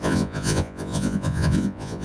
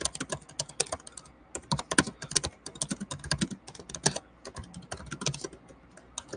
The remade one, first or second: first